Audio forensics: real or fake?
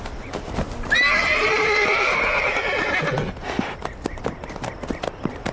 real